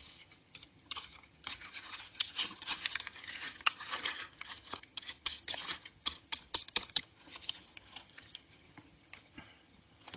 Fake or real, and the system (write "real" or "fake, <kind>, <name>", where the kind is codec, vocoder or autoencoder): fake, vocoder, HiFi-GAN